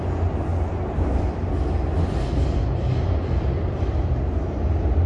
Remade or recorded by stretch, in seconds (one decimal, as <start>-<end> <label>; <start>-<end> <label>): 0.0-5.1 recorded

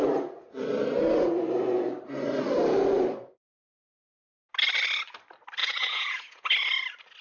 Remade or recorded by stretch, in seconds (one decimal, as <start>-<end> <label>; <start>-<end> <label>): 0.0-5.6 recorded; 5.6-6.5 remade; 6.5-7.2 recorded

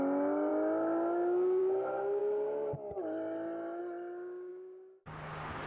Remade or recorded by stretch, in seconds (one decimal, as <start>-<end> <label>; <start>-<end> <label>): 0.0-5.7 recorded

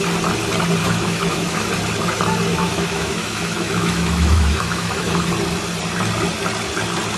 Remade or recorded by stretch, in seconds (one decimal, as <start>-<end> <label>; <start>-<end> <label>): 0.0-0.8 recorded; 0.8-1.7 remade; 1.7-2.5 recorded; 2.5-5.3 remade; 5.3-7.2 recorded

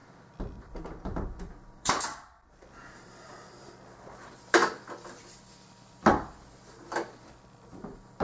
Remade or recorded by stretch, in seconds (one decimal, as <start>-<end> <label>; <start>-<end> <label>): 0.0-3.7 remade; 3.7-4.6 recorded; 4.6-6.4 remade; 6.4-8.2 recorded

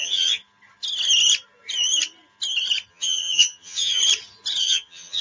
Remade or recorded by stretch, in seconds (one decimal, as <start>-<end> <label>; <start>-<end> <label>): 0.0-0.4 remade; 0.4-2.9 recorded; 2.9-4.0 remade; 4.0-4.6 recorded; 4.6-5.2 remade

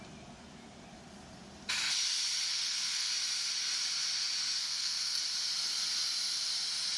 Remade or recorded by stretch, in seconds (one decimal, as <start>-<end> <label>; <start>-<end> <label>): 0.0-2.5 recorded; 2.5-3.1 remade; 3.1-4.6 recorded; 4.6-5.2 remade; 5.2-7.0 recorded